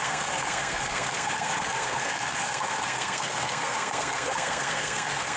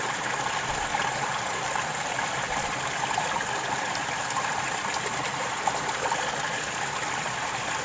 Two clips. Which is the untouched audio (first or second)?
second